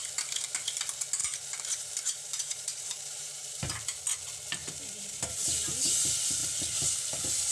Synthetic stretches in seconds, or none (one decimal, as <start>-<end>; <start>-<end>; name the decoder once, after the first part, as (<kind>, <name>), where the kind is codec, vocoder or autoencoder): 1.2-3.7 (vocoder, BigVGAN v2); 4.6-5.7